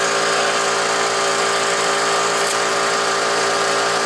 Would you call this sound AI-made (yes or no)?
yes